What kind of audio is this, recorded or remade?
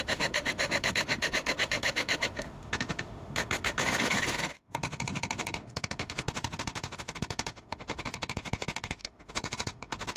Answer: remade